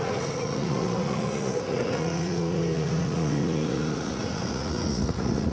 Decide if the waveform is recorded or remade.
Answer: remade